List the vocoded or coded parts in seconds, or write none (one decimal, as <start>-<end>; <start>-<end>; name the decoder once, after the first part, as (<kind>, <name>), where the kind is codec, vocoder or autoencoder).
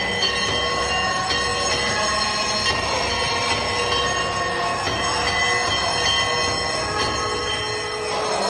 none